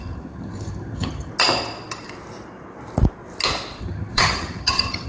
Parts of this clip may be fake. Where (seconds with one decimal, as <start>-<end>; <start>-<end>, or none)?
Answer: 0.0-1.3; 3.8-5.1